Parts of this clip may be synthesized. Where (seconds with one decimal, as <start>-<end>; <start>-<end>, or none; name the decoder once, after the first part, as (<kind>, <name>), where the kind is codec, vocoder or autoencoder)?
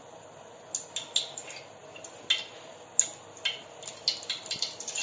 none